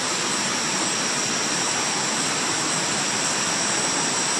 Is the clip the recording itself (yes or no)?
no